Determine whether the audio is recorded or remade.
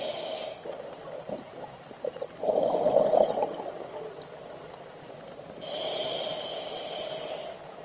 recorded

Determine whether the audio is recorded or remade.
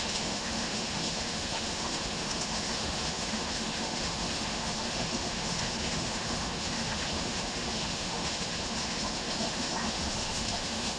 remade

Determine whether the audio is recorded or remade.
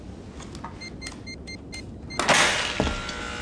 recorded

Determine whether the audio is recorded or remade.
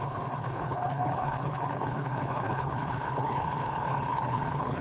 remade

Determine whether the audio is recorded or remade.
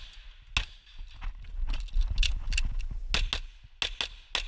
recorded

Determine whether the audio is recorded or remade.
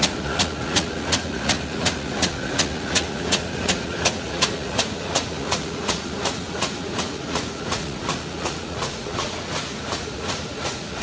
remade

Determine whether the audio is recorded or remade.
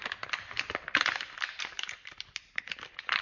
recorded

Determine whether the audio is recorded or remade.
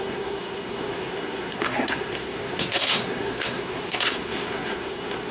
remade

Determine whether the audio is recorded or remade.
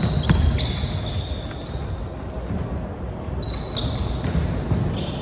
recorded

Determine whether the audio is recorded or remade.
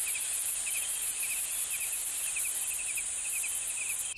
recorded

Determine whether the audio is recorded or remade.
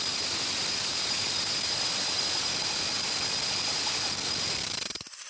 recorded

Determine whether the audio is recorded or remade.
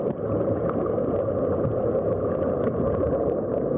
recorded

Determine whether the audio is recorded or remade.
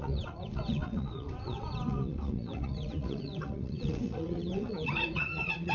remade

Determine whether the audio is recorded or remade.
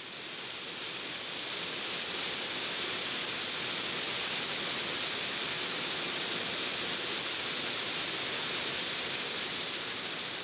recorded